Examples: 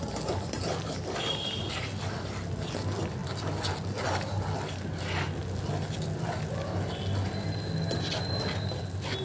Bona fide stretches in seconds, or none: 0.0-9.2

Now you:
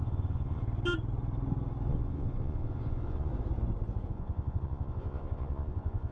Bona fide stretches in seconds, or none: 0.6-1.9; 3.3-4.1

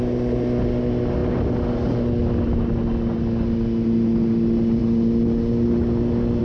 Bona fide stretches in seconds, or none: 0.0-6.4

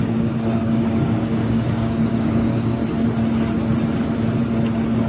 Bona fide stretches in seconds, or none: 2.8-5.1

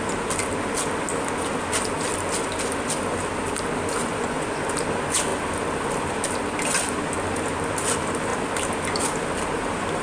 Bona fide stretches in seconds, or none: 0.0-4.0; 4.6-10.0

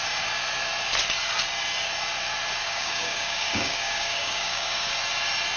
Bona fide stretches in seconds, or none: 0.0-2.6; 4.9-5.6

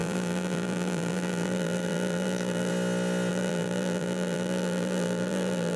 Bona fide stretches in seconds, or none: 2.7-3.3

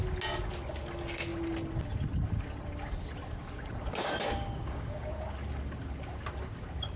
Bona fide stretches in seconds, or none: 0.0-4.0; 5.1-7.0